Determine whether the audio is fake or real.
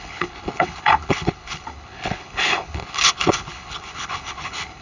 fake